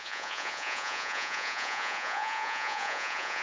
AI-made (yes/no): yes